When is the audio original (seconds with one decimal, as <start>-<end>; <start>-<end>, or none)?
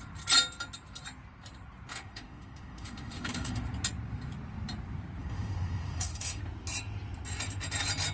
0.0-1.9; 3.6-5.2; 6.4-8.1